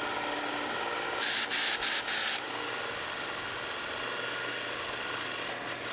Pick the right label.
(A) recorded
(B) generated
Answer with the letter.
A